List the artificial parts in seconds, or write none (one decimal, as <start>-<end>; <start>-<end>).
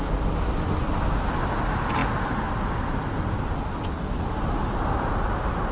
none